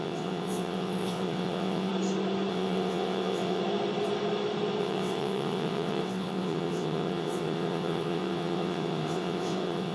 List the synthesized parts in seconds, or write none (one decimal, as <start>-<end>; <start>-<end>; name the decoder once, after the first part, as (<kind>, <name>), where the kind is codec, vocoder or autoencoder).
0.0-1.9 (vocoder, WaveNeXt); 2.5-3.6; 4.8-9.9